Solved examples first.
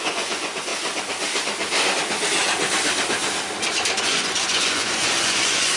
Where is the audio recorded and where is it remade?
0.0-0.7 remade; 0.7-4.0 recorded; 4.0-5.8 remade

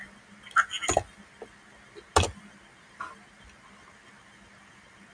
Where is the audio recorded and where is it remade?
0.0-5.1 recorded

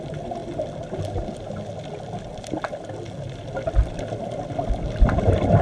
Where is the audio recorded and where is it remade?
0.0-5.6 recorded

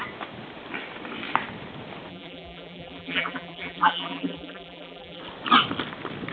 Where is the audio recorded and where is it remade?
0.0-2.1 recorded; 2.1-5.2 remade; 5.2-6.3 recorded